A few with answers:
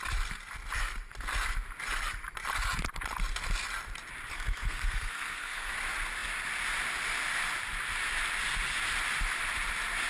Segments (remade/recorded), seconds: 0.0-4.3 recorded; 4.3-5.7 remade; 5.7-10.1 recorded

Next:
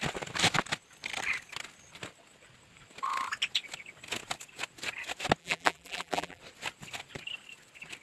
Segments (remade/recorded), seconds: 0.0-5.4 recorded; 5.4-6.4 remade; 6.4-8.0 recorded

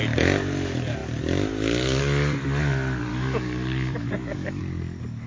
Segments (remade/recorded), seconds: 0.0-3.1 recorded; 3.1-4.6 remade; 4.6-5.3 recorded

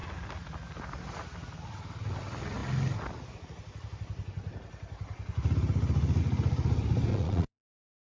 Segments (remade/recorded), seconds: 0.0-7.1 recorded; 7.1-8.1 remade

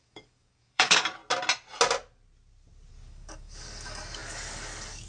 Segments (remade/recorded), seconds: 0.0-1.2 remade; 1.2-2.9 recorded; 2.9-5.1 remade